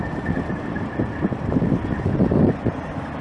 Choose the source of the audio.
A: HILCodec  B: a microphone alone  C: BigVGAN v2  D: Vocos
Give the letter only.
B